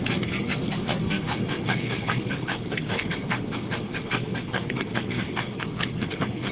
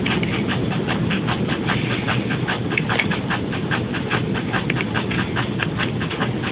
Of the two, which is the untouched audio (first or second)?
second